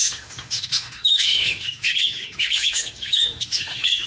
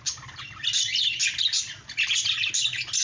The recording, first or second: second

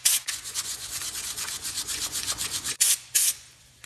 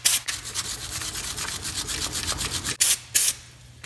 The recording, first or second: second